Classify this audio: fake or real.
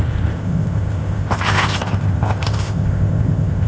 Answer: fake